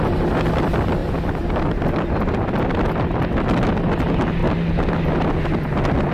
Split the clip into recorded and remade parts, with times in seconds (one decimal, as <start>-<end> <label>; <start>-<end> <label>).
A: 0.0-6.1 recorded